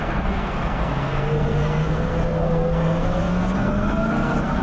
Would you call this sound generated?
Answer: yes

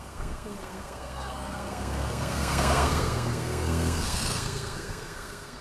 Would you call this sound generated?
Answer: yes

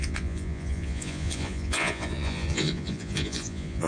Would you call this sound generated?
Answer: yes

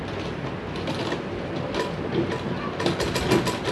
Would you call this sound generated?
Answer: no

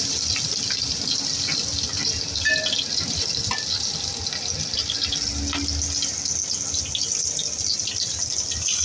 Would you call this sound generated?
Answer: no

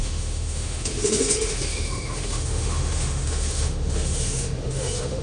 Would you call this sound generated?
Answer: yes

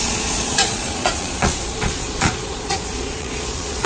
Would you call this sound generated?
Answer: yes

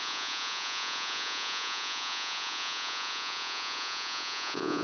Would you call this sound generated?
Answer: yes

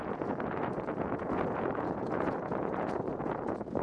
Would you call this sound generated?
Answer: yes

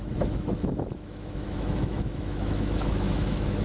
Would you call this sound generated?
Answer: yes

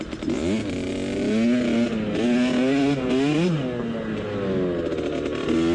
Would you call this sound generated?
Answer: no